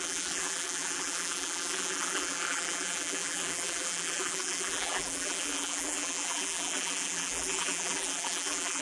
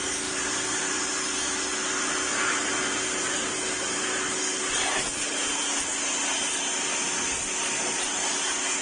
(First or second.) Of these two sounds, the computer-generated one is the first